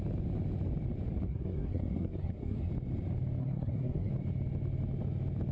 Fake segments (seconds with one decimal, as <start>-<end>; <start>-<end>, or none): 1.3-2.7; 3.4-4.1